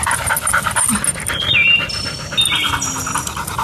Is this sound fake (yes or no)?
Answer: no